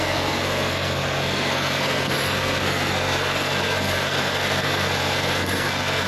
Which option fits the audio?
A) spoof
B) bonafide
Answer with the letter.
A